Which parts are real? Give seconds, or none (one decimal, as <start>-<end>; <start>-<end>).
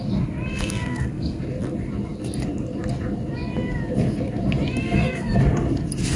0.0-0.5; 1.4-4.8; 5.4-6.2